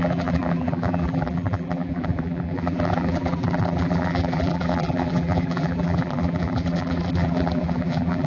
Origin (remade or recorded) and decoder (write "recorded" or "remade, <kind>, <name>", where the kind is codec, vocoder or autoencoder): remade, vocoder, BigVGAN v2